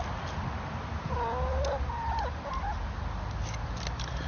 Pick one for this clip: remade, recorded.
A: recorded